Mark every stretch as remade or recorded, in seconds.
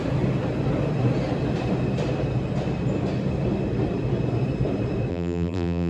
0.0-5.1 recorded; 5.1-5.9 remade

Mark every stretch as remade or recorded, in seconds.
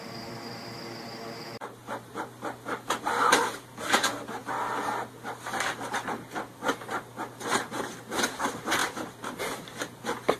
0.0-4.4 remade; 4.4-7.5 recorded; 7.5-10.4 remade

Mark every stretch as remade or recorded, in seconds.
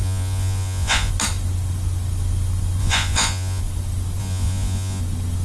0.0-1.1 remade; 1.1-2.8 recorded; 2.8-3.6 remade; 3.6-4.2 recorded; 4.2-5.0 remade; 5.0-5.4 recorded